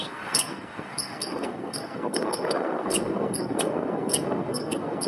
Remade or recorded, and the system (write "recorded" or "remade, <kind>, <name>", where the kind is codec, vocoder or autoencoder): remade, codec, SNAC